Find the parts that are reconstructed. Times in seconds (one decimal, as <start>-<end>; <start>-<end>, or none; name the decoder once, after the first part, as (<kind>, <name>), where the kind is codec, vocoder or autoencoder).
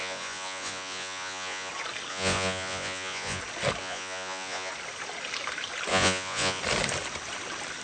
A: 0.0-1.7 (vocoder, Vocos); 2.1-3.4; 3.8-4.7; 5.9-6.6